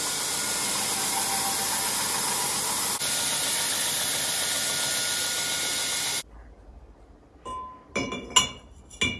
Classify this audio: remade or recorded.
recorded